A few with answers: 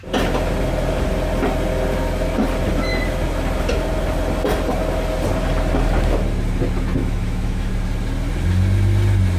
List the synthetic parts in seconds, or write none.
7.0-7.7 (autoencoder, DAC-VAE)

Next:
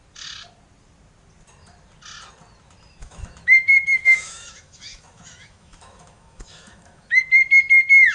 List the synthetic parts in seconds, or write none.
3.0-7.2 (autoencoder, DAC-VAE)

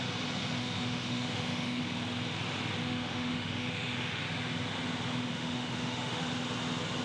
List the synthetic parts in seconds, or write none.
0.6-1.8 (autoencoder, DAC-VAE); 2.8-4.2; 5.3-6.2

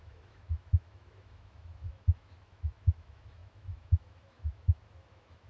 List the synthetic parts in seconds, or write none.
0.0-5.5 (autoencoder, DAC-VAE)

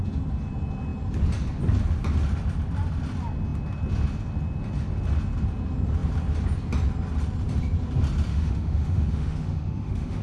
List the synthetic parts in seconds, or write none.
8.3-10.2 (autoencoder, DAC-VAE)